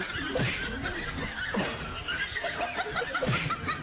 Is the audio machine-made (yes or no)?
no